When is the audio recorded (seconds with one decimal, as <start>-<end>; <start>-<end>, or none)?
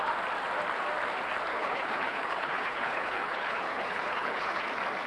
0.0-1.5; 4.6-5.1